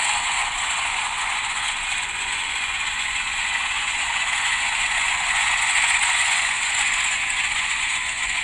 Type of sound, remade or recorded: remade